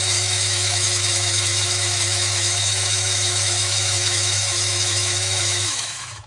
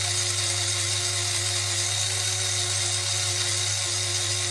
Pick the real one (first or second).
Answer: second